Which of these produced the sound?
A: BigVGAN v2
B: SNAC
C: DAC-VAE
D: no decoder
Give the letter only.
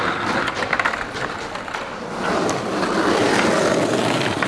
A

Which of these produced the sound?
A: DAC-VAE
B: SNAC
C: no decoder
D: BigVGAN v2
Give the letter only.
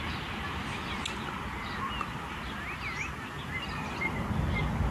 C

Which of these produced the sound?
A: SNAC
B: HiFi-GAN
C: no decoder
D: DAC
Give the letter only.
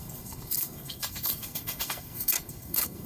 A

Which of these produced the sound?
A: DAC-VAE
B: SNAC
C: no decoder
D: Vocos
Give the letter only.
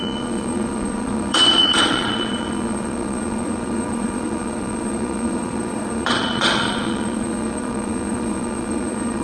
D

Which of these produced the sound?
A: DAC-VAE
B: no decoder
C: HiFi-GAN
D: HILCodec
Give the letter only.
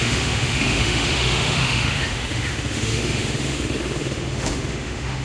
A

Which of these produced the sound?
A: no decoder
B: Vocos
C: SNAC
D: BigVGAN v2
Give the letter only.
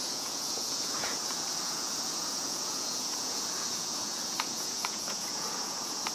B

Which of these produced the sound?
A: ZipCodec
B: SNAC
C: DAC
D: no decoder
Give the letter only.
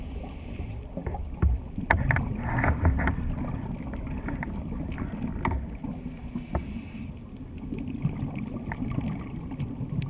D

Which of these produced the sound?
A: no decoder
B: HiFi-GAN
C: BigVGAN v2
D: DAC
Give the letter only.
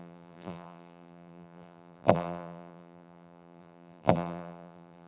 C